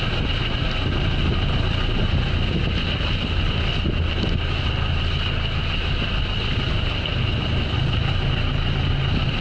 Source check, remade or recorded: recorded